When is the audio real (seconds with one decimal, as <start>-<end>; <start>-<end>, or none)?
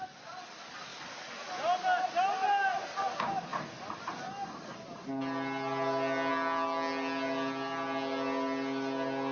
0.0-9.3